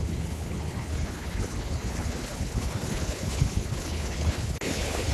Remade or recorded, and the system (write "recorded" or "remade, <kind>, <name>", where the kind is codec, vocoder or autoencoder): remade, codec, HILCodec